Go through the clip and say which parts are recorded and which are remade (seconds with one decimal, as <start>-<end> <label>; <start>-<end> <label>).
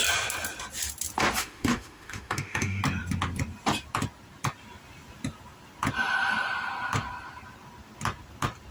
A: 0.0-1.4 recorded; 1.4-2.8 remade; 2.8-8.7 recorded